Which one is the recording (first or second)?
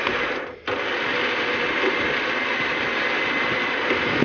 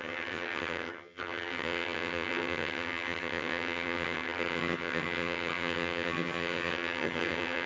first